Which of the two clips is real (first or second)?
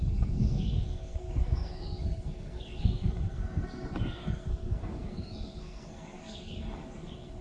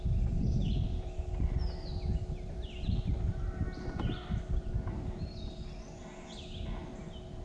second